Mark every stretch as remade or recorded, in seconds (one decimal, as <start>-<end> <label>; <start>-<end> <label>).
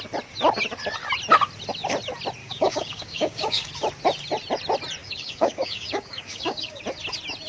0.0-2.4 recorded; 2.4-3.7 remade; 3.7-5.0 recorded; 5.0-6.8 remade; 6.8-7.5 recorded